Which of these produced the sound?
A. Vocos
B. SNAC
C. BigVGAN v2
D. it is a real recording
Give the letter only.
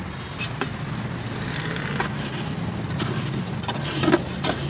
D